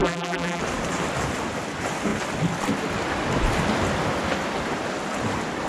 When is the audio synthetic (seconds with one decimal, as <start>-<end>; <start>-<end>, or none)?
0.0-0.6